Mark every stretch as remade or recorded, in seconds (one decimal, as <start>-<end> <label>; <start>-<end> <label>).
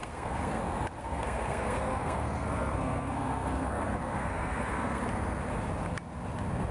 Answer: 0.0-0.6 remade; 0.6-1.0 recorded; 1.0-5.0 remade; 5.0-6.7 recorded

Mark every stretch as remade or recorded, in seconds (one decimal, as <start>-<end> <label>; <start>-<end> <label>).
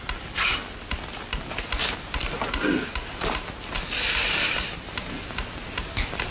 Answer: 0.0-4.2 recorded; 4.2-5.0 remade; 5.0-6.3 recorded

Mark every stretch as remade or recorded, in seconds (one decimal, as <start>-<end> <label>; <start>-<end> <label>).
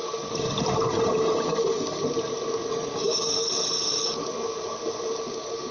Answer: 0.0-2.7 recorded; 2.7-3.5 remade; 3.5-5.7 recorded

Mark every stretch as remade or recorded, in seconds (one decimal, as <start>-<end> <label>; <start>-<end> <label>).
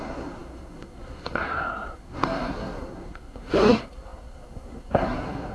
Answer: 0.0-5.5 remade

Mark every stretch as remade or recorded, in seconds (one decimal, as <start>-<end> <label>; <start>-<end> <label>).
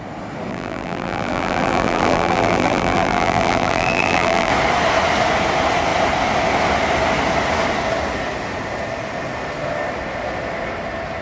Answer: 0.0-0.5 recorded; 0.5-4.5 remade; 4.5-11.2 recorded